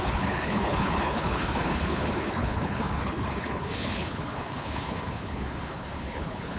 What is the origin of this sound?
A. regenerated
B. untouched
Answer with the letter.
A